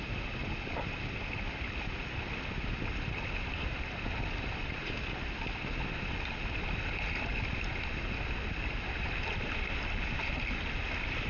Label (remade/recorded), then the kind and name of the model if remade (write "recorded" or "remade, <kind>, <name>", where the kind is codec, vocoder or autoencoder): recorded